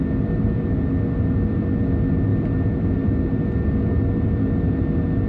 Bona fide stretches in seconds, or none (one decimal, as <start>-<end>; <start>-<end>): 0.0-5.3